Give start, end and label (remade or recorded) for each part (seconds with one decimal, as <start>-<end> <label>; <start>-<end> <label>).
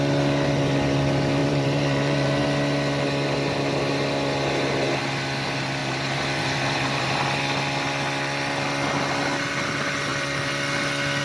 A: 0.0-1.4 recorded; 1.4-2.4 remade; 2.4-5.8 recorded; 5.8-7.2 remade; 7.2-11.2 recorded